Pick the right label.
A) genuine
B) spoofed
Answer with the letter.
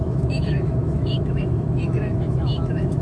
B